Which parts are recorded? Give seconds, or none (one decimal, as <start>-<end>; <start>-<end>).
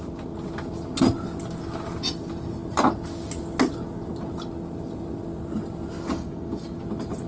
0.0-6.1; 6.8-7.3